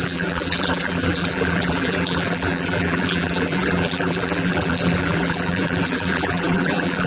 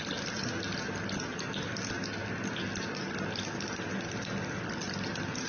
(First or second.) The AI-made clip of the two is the first